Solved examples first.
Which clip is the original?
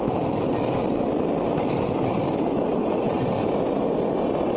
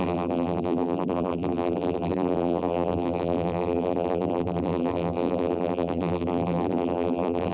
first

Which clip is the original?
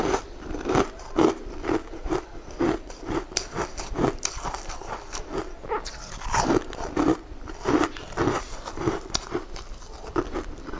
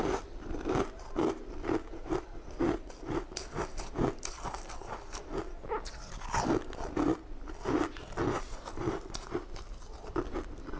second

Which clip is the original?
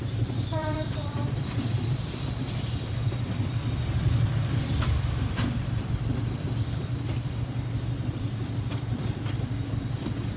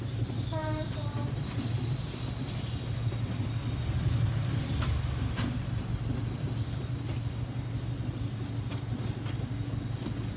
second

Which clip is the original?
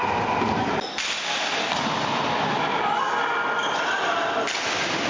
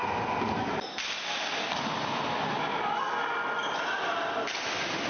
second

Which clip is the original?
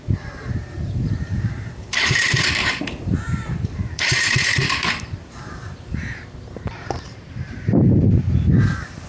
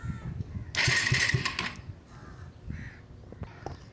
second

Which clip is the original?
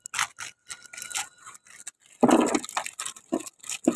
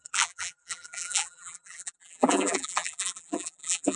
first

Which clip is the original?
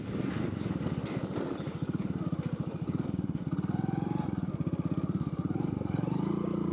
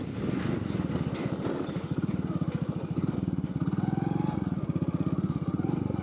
second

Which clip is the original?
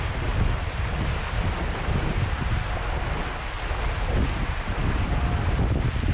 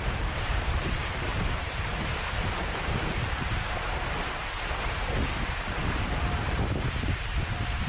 first